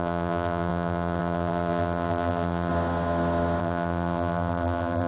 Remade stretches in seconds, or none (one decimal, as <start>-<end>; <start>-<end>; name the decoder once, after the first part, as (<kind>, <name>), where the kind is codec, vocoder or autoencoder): 0.0-2.7 (vocoder, BigVGAN v2); 3.6-5.1